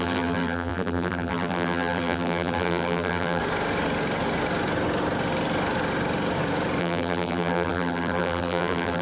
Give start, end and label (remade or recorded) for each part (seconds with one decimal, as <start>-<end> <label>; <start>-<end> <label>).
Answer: 0.0-3.4 remade; 3.4-6.8 recorded; 6.8-9.0 remade

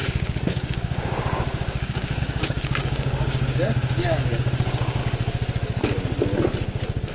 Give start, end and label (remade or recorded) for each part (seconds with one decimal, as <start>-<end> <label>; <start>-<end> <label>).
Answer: 0.0-5.0 remade; 5.0-7.1 recorded

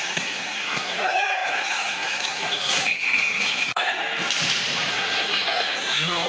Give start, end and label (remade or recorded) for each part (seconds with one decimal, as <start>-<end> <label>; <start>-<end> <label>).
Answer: 0.0-4.0 remade; 4.0-4.9 recorded; 4.9-6.3 remade

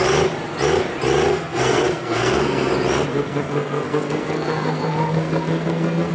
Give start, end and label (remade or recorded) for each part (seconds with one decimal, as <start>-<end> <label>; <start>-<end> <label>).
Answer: 0.0-1.3 recorded; 1.3-2.7 remade; 2.7-3.1 recorded; 3.1-6.1 remade

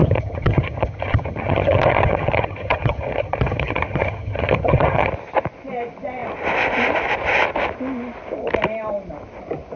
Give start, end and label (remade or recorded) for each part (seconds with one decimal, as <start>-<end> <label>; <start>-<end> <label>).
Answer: 0.0-5.1 remade; 5.1-9.8 recorded

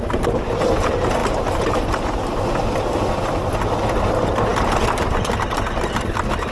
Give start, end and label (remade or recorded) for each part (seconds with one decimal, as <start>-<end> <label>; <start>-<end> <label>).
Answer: 0.0-6.5 recorded